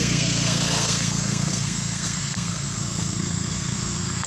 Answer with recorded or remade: remade